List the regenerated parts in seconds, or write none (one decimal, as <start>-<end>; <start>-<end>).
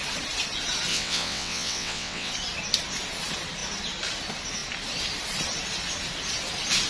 0.9-2.3